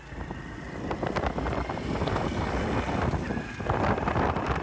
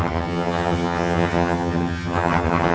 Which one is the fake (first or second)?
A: second